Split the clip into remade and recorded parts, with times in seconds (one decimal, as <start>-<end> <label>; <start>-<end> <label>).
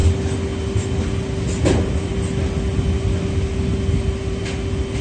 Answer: 0.0-5.0 recorded